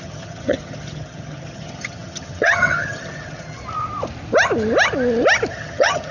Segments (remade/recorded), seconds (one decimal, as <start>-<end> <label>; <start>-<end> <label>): 0.0-3.6 remade; 3.6-5.5 recorded; 5.5-6.1 remade